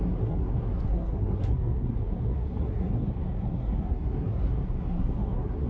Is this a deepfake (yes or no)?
yes